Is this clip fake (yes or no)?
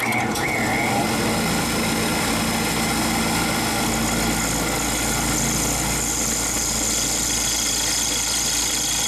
no